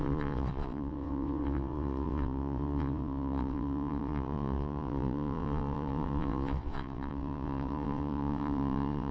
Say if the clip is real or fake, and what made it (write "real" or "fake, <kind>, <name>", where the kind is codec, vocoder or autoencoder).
fake, vocoder, WaveNeXt